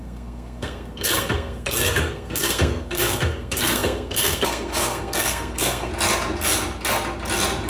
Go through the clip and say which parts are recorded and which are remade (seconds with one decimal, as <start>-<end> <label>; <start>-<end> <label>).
0.0-5.9 remade; 5.9-7.7 recorded